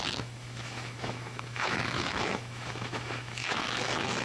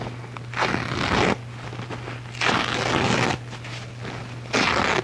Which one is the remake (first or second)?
first